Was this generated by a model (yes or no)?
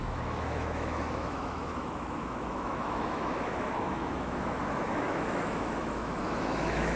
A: yes